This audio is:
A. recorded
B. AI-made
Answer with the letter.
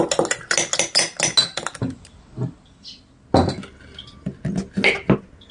A